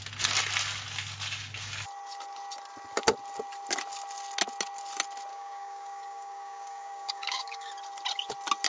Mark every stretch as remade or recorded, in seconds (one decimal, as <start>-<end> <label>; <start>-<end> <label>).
0.0-5.3 recorded; 5.3-7.7 remade; 7.7-8.7 recorded